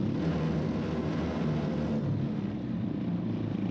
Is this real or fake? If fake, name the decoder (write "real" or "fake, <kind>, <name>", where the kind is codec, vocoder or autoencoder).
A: real